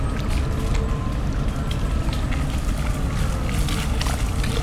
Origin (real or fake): real